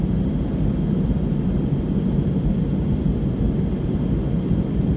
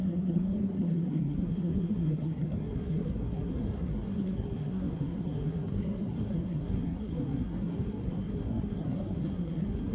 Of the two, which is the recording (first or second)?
first